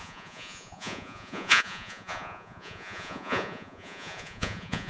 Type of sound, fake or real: fake